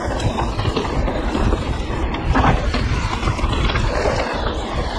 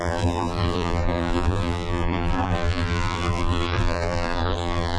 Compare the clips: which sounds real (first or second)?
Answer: first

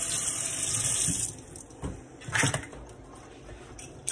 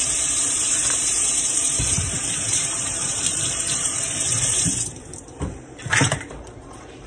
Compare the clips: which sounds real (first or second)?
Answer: first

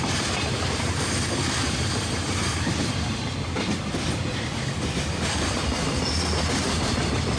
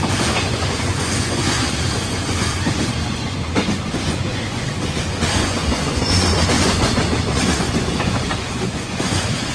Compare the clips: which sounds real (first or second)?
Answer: first